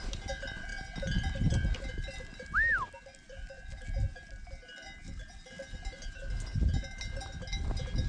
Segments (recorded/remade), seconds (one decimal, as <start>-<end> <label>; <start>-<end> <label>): 0.0-8.1 recorded